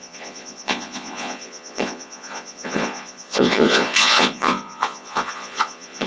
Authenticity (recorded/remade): remade